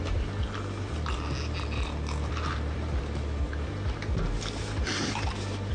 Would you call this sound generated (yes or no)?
no